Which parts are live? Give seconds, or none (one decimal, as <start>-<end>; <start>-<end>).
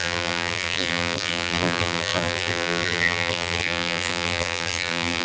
none